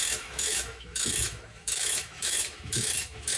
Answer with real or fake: fake